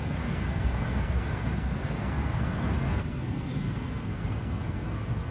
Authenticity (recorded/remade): remade